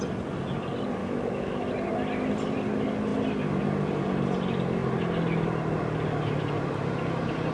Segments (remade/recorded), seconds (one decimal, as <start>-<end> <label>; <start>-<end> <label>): 0.0-1.0 recorded; 1.0-1.7 remade; 1.7-7.5 recorded